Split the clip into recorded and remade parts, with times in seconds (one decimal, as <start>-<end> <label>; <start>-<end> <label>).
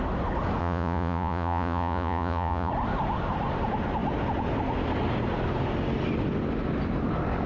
0.0-0.6 recorded; 0.6-2.7 remade; 2.7-7.5 recorded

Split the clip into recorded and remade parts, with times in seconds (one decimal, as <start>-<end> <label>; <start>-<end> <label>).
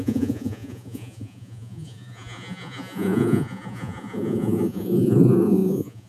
0.0-6.1 remade